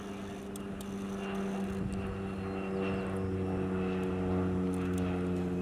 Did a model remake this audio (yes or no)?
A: no